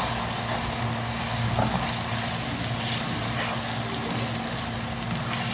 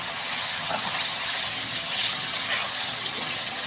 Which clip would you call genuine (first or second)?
first